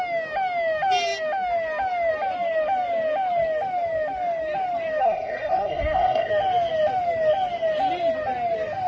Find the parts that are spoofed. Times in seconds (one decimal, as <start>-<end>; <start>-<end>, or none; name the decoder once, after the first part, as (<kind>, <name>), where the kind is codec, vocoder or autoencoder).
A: 5.0-6.3 (codec, SNAC)